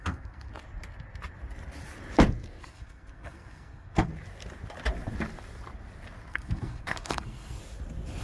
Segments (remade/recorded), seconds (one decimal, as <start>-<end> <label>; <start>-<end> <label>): 0.0-0.5 remade; 0.5-2.6 recorded; 2.6-4.1 remade; 4.1-6.3 recorded; 6.3-7.6 remade; 7.6-8.2 recorded